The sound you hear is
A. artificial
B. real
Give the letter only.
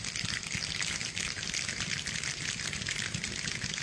B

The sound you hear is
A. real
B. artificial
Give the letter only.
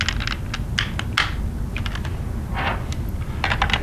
A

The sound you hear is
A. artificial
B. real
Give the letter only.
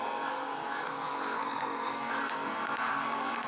A